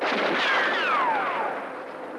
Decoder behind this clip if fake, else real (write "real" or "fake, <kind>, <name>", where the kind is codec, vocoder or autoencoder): fake, vocoder, BigVGAN v2